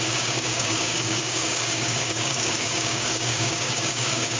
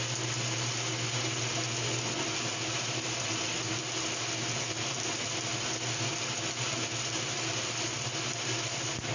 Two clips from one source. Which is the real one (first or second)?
second